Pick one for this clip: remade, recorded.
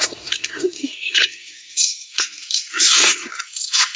remade